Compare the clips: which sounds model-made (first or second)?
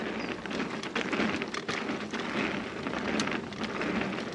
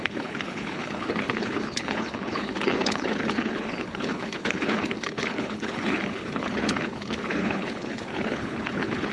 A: second